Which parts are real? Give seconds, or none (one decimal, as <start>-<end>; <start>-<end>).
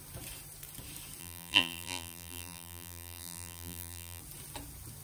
0.0-1.2; 4.2-5.0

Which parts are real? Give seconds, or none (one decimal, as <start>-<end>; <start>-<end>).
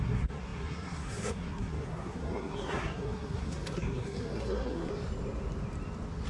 4.9-6.3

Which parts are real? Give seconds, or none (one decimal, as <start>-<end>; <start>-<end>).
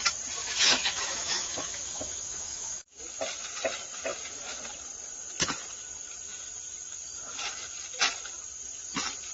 0.0-0.4; 3.0-9.3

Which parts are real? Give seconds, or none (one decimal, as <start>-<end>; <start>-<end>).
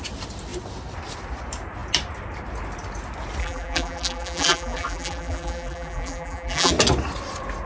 0.0-3.4; 6.7-7.7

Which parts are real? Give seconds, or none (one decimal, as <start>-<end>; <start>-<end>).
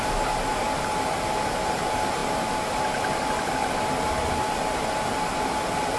0.0-6.0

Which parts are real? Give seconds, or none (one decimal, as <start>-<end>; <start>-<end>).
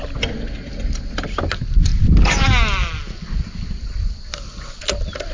0.0-5.3